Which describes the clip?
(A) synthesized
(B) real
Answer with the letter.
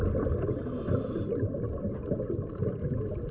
B